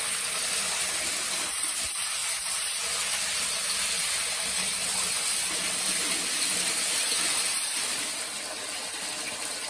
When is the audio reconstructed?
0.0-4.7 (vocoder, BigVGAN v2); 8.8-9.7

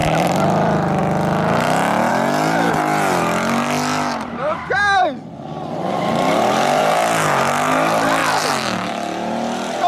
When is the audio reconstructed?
0.0-1.0 (vocoder, BigVGAN v2); 8.2-9.3